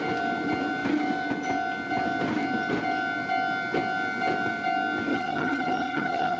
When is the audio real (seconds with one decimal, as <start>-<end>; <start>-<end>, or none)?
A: 0.0-5.1